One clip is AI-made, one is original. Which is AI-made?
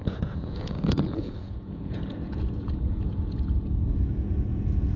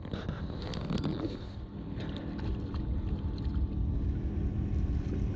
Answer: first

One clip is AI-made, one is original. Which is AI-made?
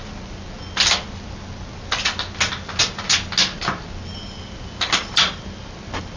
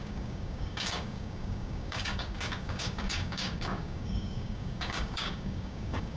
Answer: second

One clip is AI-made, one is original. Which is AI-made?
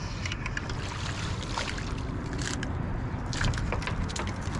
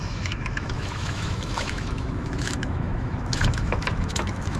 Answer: second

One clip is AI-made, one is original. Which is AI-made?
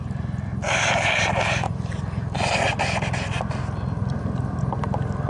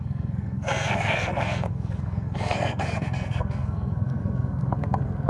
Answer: second